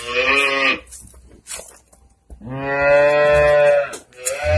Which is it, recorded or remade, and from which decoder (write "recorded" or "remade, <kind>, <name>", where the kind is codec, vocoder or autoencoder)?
recorded